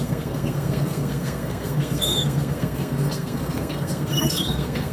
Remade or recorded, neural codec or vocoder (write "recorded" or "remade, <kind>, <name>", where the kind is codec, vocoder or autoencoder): remade, codec, SNAC